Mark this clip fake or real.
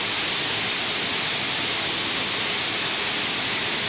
real